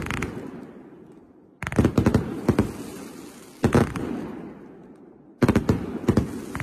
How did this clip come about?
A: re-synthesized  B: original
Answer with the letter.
B